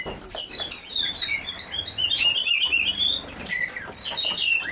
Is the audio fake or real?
fake